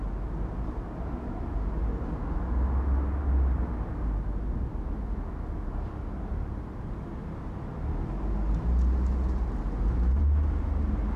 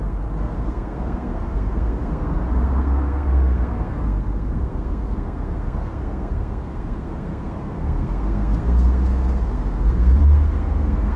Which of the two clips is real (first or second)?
first